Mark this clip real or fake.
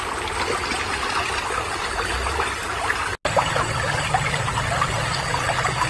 real